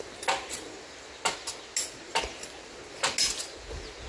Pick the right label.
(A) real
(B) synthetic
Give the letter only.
A